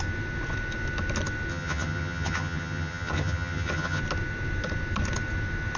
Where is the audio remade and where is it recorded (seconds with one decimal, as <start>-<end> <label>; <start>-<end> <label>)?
0.0-1.5 recorded; 1.5-4.0 remade; 4.0-5.8 recorded